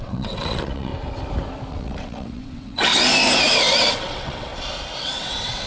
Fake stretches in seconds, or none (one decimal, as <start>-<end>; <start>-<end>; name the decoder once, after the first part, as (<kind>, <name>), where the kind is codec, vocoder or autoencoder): 0.0-0.9 (vocoder, WaveNeXt); 1.7-2.9; 3.9-4.5; 5.0-5.7